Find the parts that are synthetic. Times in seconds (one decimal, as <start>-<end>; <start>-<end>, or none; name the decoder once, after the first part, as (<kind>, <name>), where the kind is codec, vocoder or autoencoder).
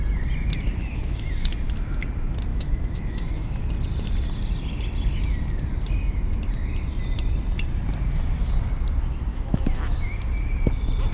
0.8-1.3 (autoencoder, DAC-VAE); 2.5-3.6; 9.3-10.2